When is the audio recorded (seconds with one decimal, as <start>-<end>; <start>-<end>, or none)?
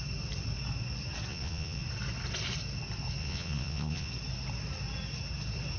0.0-1.3; 1.8-3.2; 4.1-5.8